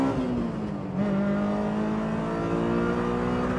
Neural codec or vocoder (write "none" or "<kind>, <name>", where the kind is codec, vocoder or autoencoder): none